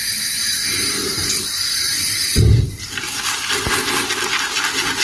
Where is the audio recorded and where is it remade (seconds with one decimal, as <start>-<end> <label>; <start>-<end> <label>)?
0.0-1.1 recorded; 1.1-3.7 remade; 3.7-5.0 recorded